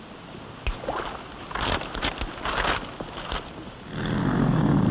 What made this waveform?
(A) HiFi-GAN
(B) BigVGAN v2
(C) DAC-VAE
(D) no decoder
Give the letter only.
D